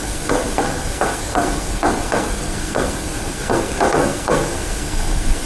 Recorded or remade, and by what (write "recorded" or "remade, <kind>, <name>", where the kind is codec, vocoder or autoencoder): remade, codec, SNAC